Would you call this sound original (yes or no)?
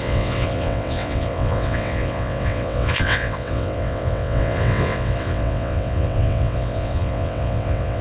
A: no